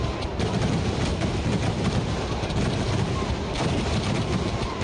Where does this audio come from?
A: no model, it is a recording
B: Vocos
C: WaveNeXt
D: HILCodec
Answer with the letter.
A